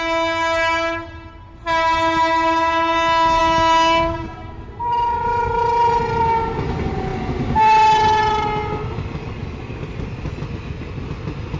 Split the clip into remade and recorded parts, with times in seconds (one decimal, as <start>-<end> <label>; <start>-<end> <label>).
0.0-3.4 recorded; 3.4-4.7 remade; 4.7-11.6 recorded